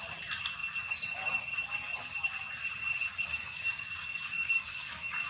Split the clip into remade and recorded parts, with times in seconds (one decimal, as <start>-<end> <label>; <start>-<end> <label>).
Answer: 0.0-3.3 recorded; 3.3-5.3 remade